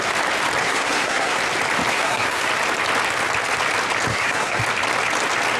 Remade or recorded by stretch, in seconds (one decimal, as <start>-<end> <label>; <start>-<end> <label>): 0.0-0.6 recorded; 0.6-1.4 remade; 1.4-1.9 recorded; 1.9-2.5 remade; 2.5-4.1 recorded; 4.1-4.6 remade; 4.6-5.6 recorded

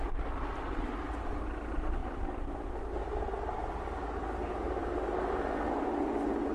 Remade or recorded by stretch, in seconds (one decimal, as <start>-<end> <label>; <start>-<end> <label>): 0.0-6.5 recorded

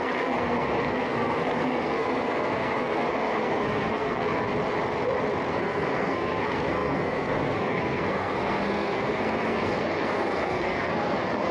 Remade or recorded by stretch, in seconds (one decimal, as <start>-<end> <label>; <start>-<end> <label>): 0.0-4.5 remade; 4.5-5.5 recorded; 5.5-11.5 remade

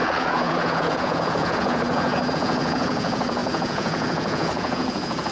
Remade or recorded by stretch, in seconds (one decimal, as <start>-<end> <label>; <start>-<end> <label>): 0.0-5.3 remade

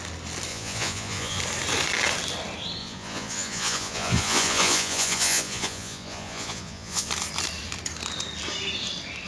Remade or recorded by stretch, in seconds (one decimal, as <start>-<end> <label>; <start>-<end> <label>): 0.0-0.5 recorded; 0.5-1.4 remade; 1.4-2.8 recorded; 2.8-7.1 remade; 7.1-9.3 recorded

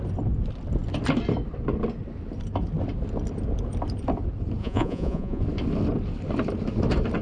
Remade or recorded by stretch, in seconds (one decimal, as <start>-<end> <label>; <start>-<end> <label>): 0.0-4.6 recorded; 4.6-5.4 remade; 5.4-7.2 recorded

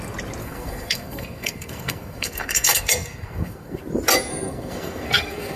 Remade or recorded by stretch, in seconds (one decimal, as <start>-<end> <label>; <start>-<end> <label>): 0.0-0.4 recorded; 0.4-3.8 remade; 3.8-4.3 recorded; 4.3-5.6 remade